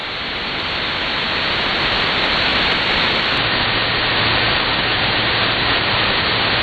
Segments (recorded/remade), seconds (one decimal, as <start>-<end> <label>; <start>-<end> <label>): 0.0-1.7 remade; 1.7-6.6 recorded